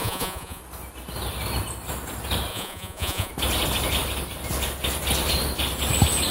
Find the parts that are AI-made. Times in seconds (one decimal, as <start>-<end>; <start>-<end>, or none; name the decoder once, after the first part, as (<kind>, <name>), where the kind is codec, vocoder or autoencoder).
0.0-0.6 (vocoder, Vocos); 2.5-3.3